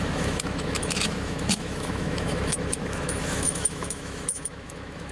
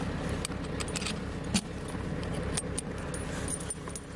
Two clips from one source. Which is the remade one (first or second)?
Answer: first